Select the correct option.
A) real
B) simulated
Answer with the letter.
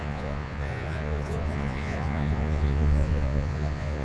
B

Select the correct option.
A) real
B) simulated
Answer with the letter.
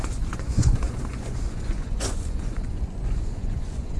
B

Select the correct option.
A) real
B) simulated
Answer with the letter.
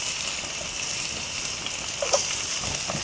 A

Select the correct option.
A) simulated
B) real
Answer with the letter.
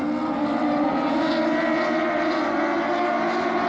B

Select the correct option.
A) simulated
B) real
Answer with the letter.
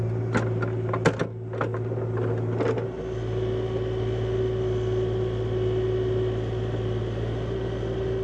B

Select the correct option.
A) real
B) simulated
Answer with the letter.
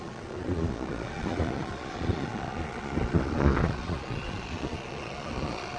B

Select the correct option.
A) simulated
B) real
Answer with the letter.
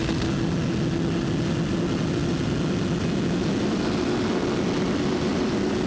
B